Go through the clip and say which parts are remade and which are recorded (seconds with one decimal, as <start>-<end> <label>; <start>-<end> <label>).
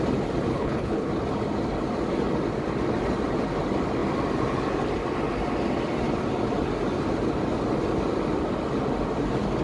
0.0-0.5 recorded; 0.5-1.1 remade; 1.1-9.6 recorded